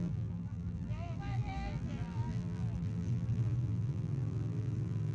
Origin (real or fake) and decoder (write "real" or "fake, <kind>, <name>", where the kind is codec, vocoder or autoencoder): fake, vocoder, BigVGAN v2